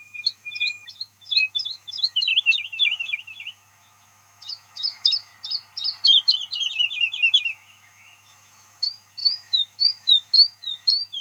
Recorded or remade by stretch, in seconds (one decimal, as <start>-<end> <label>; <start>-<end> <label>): 0.0-5.3 remade; 5.3-6.7 recorded; 6.7-11.2 remade